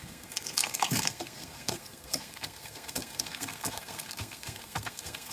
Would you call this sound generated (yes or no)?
yes